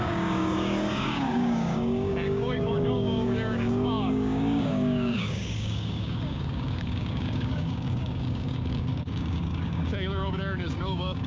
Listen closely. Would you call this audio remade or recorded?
remade